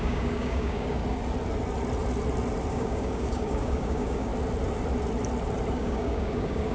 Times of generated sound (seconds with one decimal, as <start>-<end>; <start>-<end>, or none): 0.0-1.0; 2.7-4.3; 5.7-6.7